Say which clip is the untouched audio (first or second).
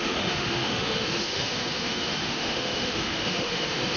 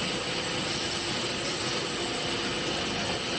second